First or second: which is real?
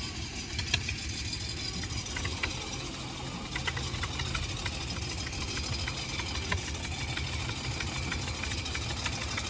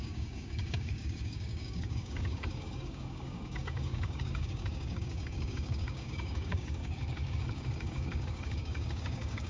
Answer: first